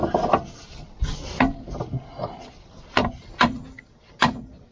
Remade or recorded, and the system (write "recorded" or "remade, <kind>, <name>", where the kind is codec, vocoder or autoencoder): recorded